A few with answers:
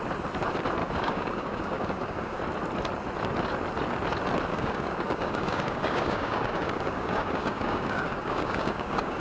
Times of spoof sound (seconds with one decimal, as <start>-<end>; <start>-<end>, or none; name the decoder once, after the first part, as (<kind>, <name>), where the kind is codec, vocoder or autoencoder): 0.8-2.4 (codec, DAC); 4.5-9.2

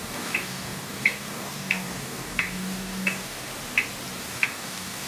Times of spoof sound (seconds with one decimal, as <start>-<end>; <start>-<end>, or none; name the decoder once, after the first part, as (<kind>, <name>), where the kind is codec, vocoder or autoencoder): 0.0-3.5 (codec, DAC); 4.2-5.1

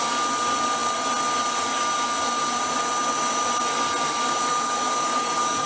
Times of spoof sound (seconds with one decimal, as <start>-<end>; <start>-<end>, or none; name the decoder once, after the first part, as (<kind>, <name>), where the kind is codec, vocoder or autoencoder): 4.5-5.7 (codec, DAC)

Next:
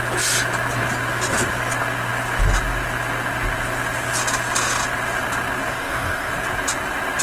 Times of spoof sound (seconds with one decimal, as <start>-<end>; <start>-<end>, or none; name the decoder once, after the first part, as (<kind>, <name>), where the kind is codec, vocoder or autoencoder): 5.7-6.3 (codec, DAC)